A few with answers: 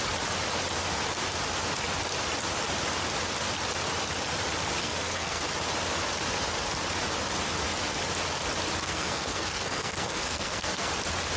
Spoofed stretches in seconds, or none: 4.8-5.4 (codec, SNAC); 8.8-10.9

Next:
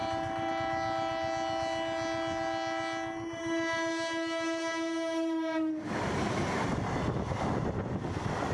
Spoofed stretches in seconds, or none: none